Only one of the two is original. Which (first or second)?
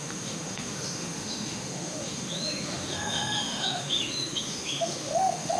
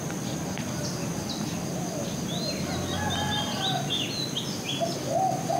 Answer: second